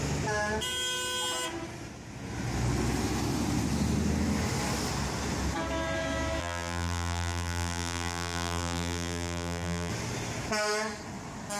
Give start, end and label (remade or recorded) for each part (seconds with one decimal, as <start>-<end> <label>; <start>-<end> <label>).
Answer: 0.0-6.4 recorded; 6.4-9.9 remade; 9.9-11.6 recorded